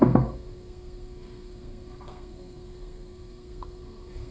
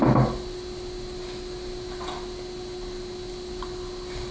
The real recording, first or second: second